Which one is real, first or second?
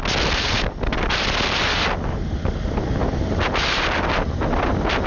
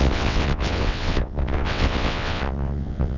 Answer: first